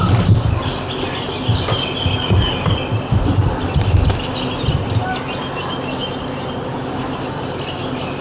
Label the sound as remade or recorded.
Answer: recorded